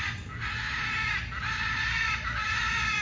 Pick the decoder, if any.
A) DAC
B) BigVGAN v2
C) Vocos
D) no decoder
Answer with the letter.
D